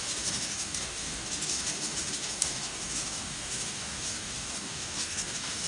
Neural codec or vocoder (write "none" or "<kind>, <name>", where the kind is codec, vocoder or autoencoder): codec, DAC